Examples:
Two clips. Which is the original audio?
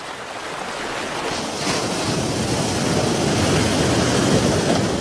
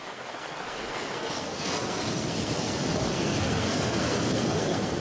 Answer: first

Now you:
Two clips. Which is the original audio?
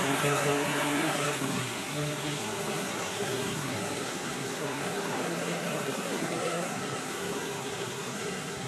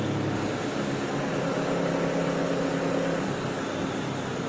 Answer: second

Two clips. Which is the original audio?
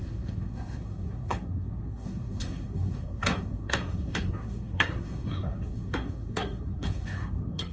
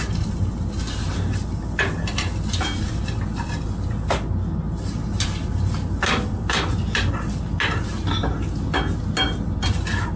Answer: second